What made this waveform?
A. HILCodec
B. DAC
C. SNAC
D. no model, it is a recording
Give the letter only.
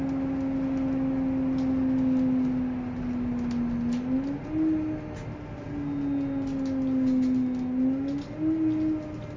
D